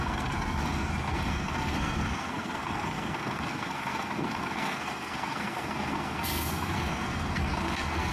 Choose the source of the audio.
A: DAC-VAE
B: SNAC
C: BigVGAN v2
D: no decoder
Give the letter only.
B